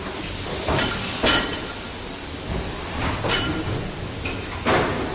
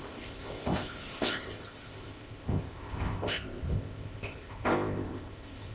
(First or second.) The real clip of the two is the first